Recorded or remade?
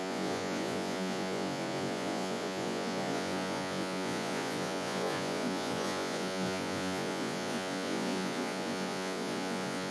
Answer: remade